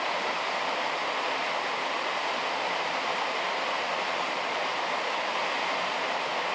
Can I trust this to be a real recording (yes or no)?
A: yes